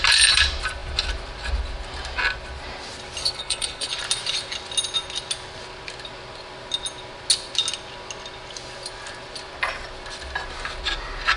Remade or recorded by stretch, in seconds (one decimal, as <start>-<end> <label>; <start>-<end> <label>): 0.0-3.2 recorded; 3.2-3.9 remade; 3.9-11.4 recorded